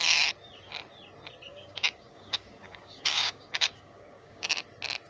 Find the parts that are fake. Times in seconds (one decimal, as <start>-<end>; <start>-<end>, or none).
1.5-4.5